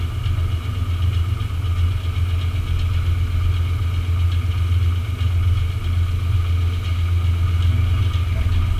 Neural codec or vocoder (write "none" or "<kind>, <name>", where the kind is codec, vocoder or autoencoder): none